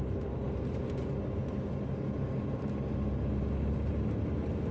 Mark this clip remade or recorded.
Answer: recorded